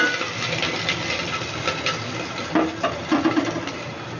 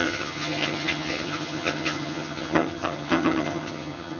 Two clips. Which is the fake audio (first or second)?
second